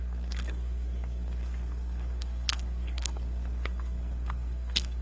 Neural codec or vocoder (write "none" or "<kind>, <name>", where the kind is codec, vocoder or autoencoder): codec, SNAC